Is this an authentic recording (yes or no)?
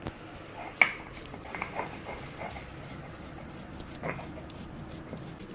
yes